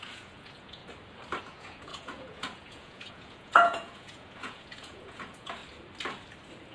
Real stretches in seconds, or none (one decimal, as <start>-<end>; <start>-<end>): 0.8-1.4; 5.6-6.7

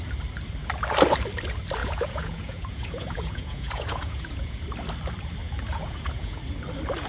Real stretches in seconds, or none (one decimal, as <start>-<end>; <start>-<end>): 0.0-1.8; 4.6-5.4; 6.4-7.1

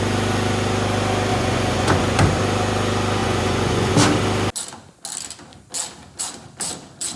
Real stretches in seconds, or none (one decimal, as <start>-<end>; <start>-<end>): 0.0-1.3; 2.2-3.2; 3.9-7.2

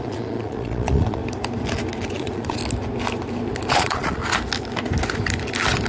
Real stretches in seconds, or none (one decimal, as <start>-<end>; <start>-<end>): 1.2-2.1; 2.6-3.7; 4.2-5.9

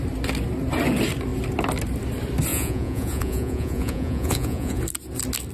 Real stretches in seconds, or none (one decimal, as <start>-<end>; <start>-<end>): 0.0-2.5; 4.8-5.5